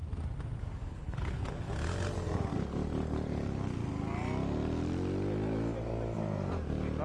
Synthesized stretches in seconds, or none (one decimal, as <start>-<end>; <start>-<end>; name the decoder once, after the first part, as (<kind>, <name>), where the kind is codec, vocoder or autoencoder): 0.8-1.7 (codec, HILCodec)